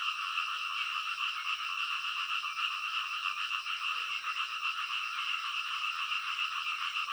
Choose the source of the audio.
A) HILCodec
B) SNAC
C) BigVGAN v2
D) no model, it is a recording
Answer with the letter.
C